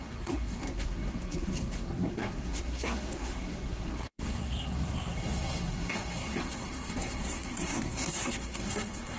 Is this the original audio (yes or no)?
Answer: no